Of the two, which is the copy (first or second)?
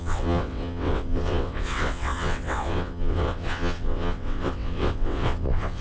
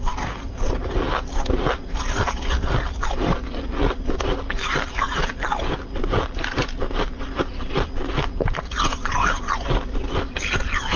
first